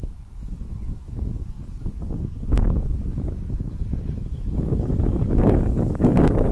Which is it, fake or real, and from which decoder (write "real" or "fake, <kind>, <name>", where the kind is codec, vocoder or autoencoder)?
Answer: fake, codec, DAC